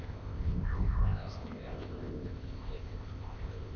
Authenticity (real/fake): fake